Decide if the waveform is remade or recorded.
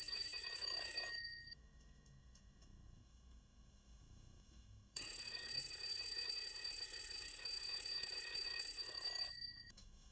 remade